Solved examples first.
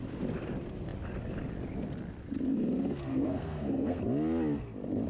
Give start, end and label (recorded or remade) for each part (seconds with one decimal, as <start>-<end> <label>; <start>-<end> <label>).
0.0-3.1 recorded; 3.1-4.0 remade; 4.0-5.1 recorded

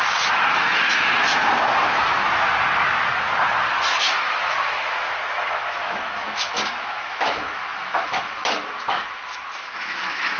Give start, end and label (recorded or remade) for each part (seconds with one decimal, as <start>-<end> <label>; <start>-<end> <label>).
0.0-2.2 remade; 2.2-4.0 recorded; 4.0-10.4 remade

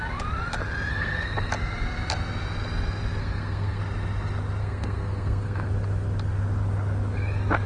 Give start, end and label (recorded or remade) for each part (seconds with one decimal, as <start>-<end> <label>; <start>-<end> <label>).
0.0-0.9 recorded; 0.9-1.5 remade; 1.5-3.2 recorded; 3.2-3.8 remade; 3.8-4.6 recorded; 4.6-5.7 remade; 5.7-7.7 recorded